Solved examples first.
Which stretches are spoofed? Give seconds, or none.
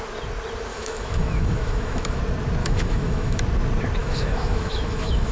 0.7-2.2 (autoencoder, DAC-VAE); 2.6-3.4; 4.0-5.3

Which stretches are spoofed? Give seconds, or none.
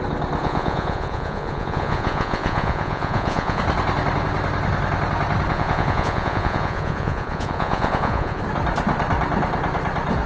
0.4-3.6 (vocoder, Vocos); 5.5-8.4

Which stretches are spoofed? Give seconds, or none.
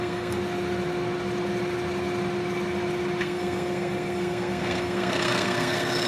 0.0-0.4 (codec, SNAC); 3.2-6.1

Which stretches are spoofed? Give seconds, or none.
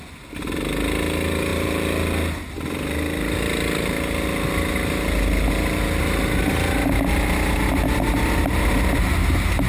none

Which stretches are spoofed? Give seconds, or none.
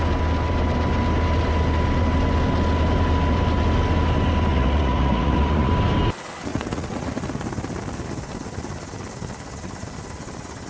4.5-5.7 (vocoder, Vocos); 6.5-7.1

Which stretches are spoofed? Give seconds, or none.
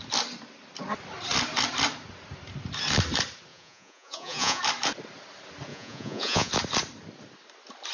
3.5-4.6 (vocoder, Vocos); 5.7-6.5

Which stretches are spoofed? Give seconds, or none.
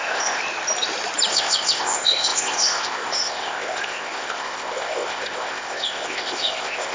0.0-0.4 (codec, ZipCodec); 1.3-6.9